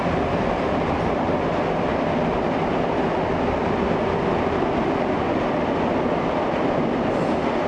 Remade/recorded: recorded